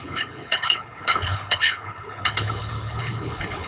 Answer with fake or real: fake